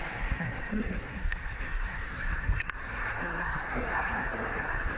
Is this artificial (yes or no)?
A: yes